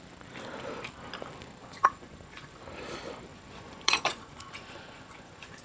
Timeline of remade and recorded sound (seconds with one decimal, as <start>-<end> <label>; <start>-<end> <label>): 0.0-1.6 recorded; 1.6-2.6 remade; 2.6-3.3 recorded; 3.3-5.6 remade